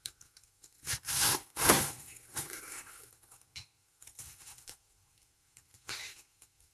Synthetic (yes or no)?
yes